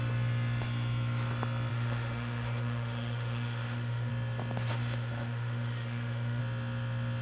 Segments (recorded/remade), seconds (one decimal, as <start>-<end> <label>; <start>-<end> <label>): 0.0-1.7 recorded; 1.7-4.1 remade; 4.1-4.7 recorded; 4.7-6.4 remade; 6.4-7.2 recorded